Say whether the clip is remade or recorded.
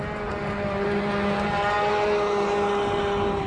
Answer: recorded